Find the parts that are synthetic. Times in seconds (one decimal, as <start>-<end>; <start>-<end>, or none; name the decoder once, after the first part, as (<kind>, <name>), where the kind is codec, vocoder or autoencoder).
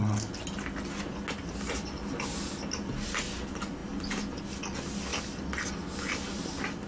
5.1-5.7 (vocoder, BigVGAN v2)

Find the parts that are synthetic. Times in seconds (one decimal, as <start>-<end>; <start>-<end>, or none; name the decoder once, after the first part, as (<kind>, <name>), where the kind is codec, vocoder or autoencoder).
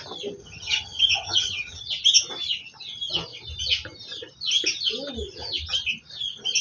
0.4-1.8 (vocoder, HiFi-GAN)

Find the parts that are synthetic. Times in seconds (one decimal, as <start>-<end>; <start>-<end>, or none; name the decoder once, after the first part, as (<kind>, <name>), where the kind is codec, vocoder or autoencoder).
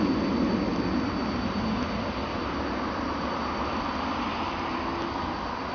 none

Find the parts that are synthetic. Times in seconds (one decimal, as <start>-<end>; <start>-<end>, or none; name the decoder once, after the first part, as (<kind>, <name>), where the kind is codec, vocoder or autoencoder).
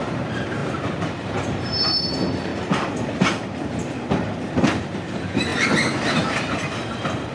0.0-2.5 (vocoder, BigVGAN v2); 4.0-7.3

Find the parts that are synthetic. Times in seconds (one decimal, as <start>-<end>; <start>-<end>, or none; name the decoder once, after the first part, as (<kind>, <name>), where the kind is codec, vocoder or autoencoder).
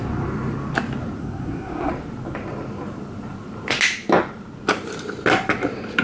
1.2-1.9 (codec, SNAC)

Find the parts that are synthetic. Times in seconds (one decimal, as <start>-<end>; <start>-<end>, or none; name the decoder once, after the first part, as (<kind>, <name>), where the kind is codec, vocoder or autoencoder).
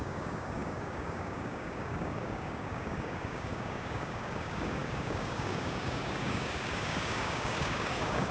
0.0-8.3 (codec, DAC)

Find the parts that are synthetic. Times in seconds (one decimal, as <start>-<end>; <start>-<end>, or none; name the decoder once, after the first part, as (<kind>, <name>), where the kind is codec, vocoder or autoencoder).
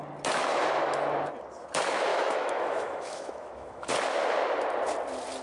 2.1-3.9 (autoencoder, DAC-VAE)